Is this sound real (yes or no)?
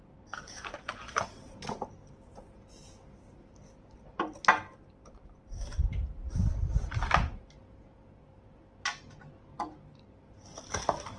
yes